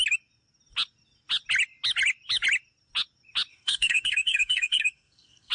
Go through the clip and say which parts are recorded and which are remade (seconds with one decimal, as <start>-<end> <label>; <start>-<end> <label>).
0.0-3.5 recorded; 3.5-5.5 remade